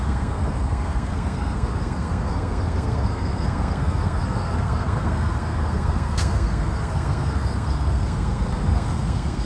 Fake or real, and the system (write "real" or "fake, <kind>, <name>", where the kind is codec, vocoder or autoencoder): fake, codec, SNAC